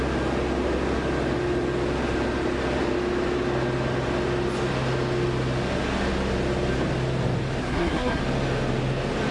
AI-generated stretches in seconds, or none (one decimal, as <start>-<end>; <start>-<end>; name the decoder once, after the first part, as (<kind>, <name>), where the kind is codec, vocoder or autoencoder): 7.6-8.2 (codec, SNAC)